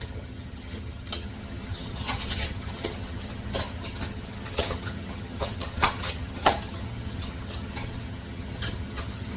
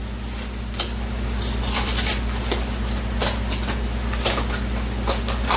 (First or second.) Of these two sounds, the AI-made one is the first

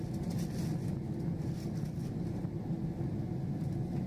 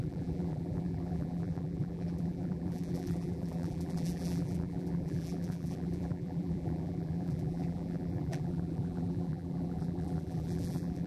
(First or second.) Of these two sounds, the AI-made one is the second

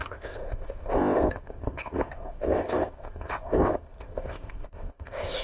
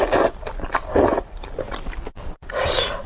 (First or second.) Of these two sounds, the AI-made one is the first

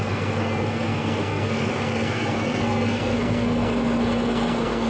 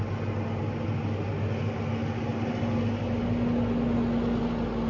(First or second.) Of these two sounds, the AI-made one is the first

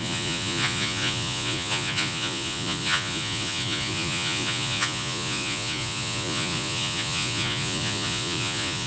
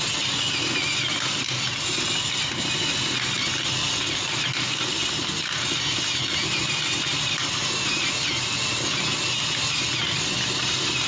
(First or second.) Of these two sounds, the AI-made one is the first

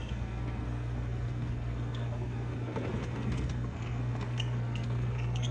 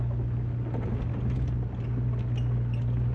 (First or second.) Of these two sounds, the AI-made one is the first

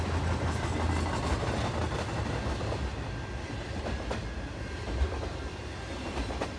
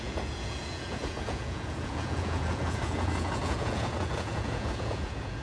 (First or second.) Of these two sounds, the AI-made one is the second